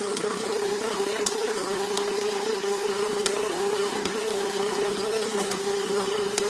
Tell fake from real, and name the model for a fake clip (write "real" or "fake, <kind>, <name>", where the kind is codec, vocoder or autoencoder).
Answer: fake, codec, SNAC